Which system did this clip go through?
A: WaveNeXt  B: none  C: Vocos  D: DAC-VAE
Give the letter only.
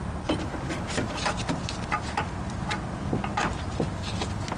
B